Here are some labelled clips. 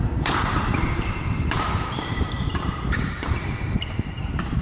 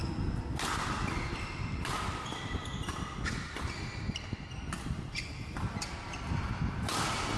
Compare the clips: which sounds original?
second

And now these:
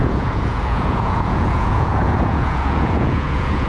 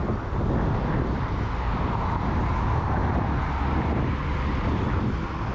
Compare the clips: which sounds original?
second